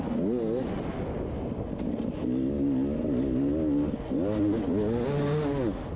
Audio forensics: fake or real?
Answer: real